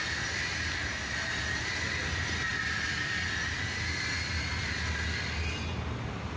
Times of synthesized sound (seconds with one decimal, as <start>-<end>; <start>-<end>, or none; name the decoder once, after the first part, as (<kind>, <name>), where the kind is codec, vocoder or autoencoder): none